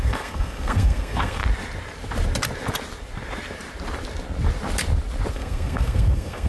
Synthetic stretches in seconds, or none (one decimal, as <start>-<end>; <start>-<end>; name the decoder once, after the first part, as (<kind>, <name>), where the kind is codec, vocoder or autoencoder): 0.0-1.4 (codec, SNAC); 5.3-6.5